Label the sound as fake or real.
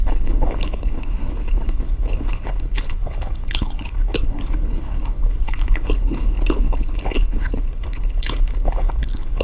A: fake